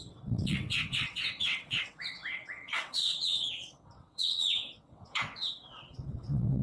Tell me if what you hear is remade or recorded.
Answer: remade